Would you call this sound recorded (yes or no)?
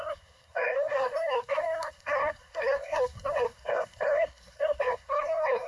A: no